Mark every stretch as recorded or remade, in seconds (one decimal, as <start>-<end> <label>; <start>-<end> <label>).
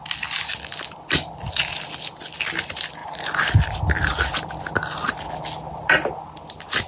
0.0-6.9 recorded